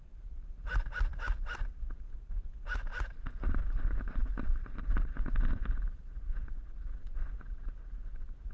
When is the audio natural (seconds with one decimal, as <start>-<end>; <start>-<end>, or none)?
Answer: 0.0-8.5